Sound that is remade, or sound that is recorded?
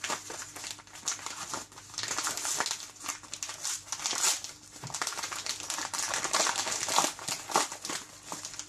recorded